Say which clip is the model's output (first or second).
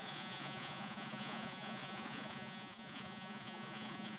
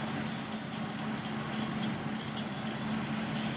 first